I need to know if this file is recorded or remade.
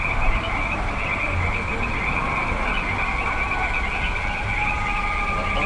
recorded